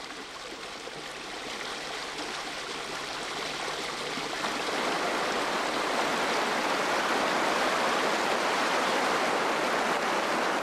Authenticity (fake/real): real